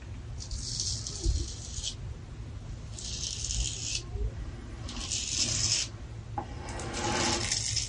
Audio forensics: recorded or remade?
recorded